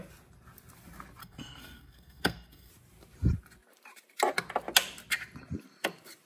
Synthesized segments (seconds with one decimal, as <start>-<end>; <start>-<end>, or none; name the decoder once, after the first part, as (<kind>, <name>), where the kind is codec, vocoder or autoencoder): 1.2-2.7 (codec, SNAC)